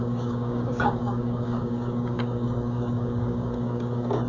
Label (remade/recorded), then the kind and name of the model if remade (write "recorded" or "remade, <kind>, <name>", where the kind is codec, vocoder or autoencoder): remade, codec, DAC